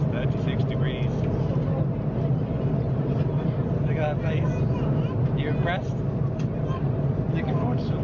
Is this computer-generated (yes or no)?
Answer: no